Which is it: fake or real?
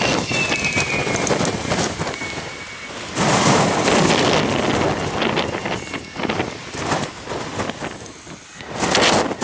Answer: real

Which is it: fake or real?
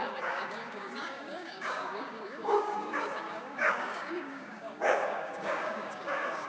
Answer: fake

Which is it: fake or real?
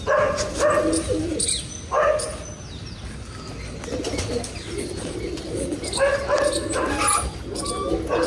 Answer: real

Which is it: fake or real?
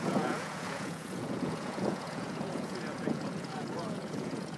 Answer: fake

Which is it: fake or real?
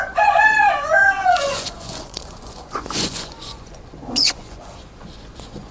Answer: fake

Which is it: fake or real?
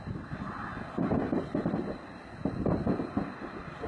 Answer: real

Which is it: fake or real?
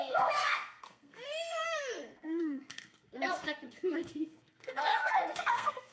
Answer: fake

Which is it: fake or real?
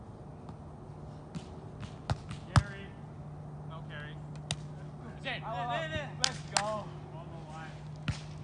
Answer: real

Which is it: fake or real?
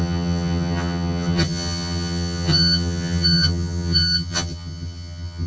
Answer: fake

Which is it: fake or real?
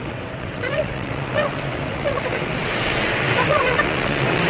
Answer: fake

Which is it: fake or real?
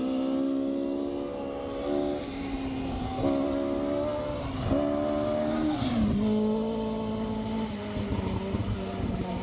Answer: real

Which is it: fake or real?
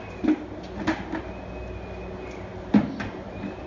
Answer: real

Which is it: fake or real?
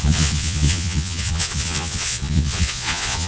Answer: fake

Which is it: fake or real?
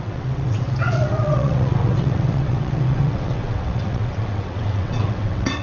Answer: fake